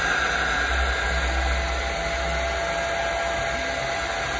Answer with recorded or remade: recorded